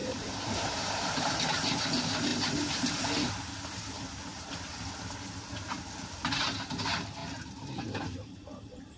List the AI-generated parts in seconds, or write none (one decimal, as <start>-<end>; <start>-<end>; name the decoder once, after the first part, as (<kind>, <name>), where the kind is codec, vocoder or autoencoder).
0.0-1.4 (vocoder, BigVGAN v2); 7.2-9.0